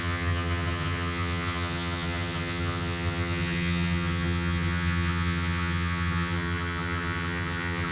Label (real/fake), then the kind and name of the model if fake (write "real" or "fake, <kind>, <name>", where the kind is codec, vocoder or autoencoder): fake, vocoder, HiFi-GAN